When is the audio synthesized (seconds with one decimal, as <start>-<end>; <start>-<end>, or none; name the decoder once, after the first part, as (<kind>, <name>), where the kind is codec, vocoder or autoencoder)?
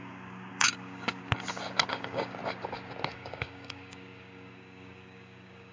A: 0.0-1.2 (codec, DAC); 1.9-2.4; 3.1-5.7